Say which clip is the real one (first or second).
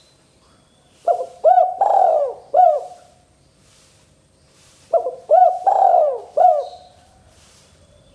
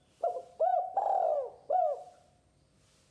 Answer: second